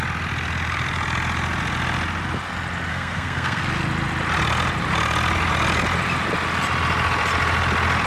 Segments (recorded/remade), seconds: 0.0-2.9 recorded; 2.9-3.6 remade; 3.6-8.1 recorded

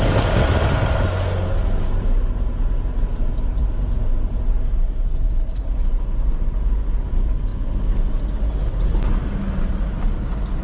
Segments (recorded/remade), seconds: 0.0-10.6 recorded

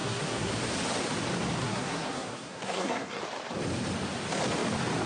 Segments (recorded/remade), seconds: 0.0-0.5 remade; 0.5-1.6 recorded; 1.6-3.2 remade; 3.2-5.1 recorded